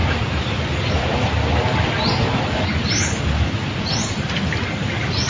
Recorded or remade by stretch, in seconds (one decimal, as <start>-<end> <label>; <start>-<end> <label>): 0.0-5.3 recorded